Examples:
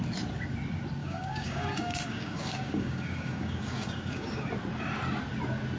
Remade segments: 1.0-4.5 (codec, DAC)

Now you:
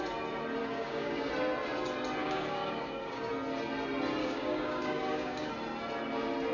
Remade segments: 0.6-1.3 (codec, DAC); 2.2-3.3; 4.2-5.5

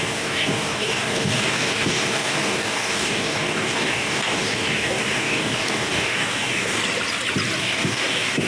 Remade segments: 0.0-6.8 (codec, DAC); 7.6-8.5